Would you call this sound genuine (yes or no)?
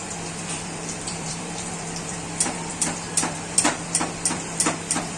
no